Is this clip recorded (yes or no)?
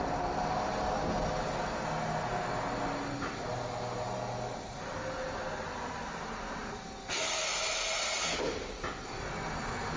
yes